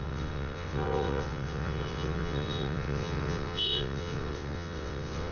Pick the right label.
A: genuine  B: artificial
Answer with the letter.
B